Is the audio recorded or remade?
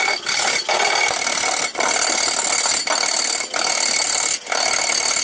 recorded